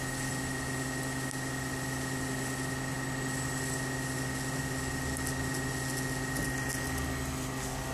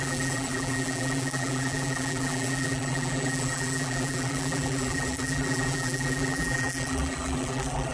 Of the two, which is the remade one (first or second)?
second